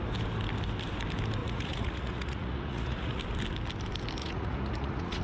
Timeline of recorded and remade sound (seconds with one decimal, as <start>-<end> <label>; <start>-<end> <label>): 0.0-1.4 recorded; 1.4-3.2 remade; 3.2-4.2 recorded; 4.2-5.2 remade